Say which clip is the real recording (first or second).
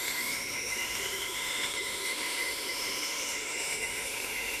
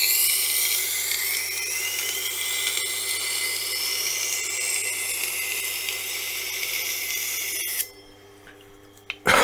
second